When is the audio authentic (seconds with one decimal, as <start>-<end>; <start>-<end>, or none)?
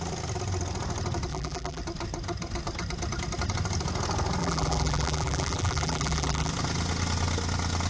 0.0-1.3; 1.8-4.4; 6.5-7.9